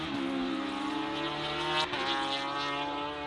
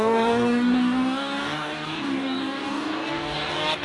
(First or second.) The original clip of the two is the first